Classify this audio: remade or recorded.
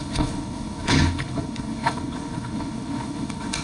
remade